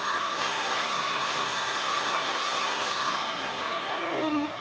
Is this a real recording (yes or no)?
no